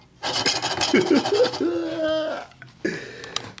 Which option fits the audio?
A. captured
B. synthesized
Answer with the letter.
A